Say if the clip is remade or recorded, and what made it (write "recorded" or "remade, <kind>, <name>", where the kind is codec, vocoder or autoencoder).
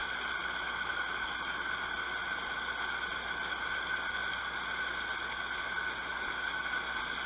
recorded